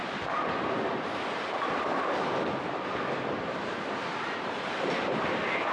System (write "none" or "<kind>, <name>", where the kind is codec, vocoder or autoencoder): none